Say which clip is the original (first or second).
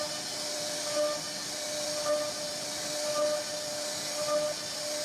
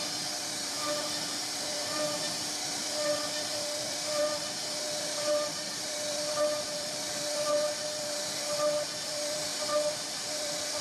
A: first